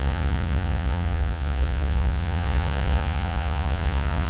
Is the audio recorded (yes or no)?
no